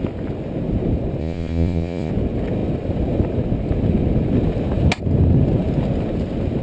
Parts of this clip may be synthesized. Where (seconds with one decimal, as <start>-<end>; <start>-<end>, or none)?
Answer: 1.2-2.1